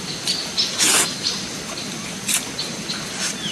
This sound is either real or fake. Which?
real